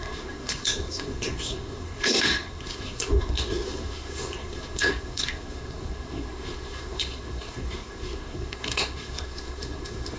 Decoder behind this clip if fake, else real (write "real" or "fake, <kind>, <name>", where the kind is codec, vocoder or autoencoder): fake, codec, SNAC